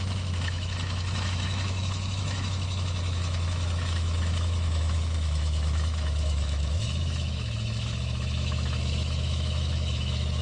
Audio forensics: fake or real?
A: fake